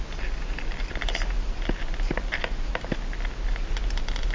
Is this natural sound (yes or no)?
yes